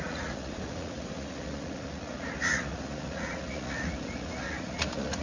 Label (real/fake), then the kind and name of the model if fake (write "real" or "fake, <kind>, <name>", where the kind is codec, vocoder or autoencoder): fake, vocoder, Vocos